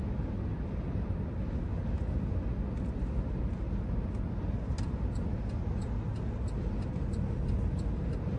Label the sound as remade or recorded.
recorded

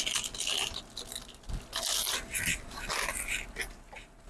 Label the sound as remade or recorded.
recorded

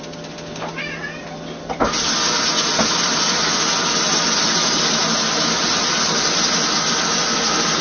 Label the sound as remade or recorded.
recorded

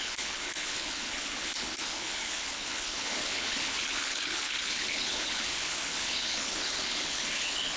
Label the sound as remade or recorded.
remade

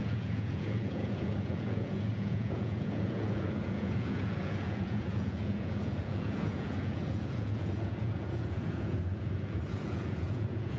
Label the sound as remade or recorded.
remade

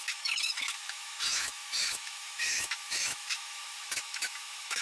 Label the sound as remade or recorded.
remade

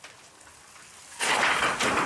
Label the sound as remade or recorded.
recorded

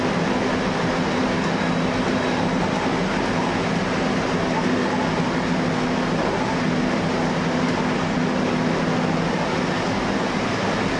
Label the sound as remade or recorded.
recorded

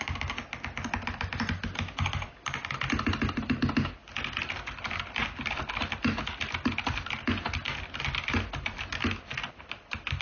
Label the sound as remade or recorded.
recorded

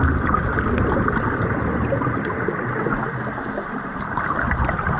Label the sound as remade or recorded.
recorded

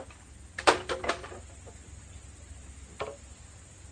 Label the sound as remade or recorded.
recorded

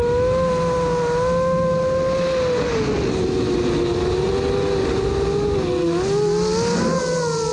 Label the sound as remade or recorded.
recorded